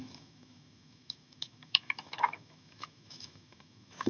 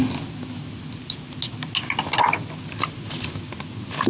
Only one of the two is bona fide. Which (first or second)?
second